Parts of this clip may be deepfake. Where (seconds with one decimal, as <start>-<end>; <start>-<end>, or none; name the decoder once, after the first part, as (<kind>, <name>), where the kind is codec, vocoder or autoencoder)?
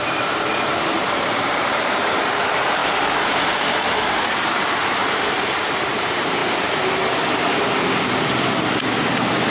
0.0-6.4 (vocoder, BigVGAN v2); 9.1-9.5